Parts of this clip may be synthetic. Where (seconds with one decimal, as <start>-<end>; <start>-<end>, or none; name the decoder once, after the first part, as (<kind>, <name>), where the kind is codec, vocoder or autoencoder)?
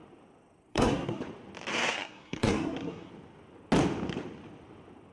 0.7-1.2 (codec, SNAC); 1.7-3.1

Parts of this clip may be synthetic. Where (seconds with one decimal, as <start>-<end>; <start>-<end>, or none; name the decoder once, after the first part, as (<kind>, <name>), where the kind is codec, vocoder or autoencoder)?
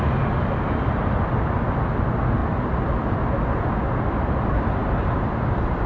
none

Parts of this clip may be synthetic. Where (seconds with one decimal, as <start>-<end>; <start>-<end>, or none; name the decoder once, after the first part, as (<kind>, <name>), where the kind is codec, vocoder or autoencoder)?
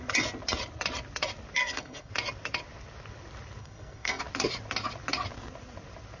1.6-2.1 (codec, SNAC); 3.6-4.2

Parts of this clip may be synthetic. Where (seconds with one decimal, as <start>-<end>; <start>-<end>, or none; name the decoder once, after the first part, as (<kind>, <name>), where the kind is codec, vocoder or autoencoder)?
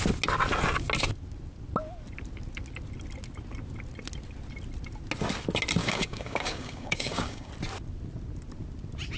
5.8-7.5 (codec, DAC)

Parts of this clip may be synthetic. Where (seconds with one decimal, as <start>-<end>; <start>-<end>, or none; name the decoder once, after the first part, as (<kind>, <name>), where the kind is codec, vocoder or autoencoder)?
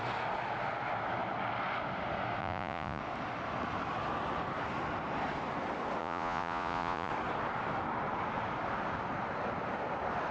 2.4-3.0 (vocoder, Vocos); 6.0-7.1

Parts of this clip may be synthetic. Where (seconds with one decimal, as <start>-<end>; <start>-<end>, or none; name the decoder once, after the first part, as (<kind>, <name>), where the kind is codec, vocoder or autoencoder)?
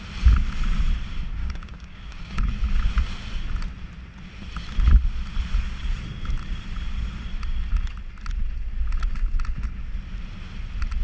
1.4-2.4 (codec, DAC)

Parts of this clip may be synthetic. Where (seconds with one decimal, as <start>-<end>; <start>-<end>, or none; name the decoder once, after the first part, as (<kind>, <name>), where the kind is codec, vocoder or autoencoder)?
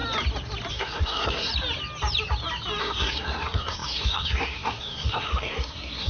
0.7-1.5 (codec, SNAC); 2.8-6.1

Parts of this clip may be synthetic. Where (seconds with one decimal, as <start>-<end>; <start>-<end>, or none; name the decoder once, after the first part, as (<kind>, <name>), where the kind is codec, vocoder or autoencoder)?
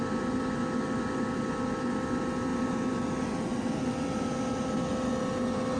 none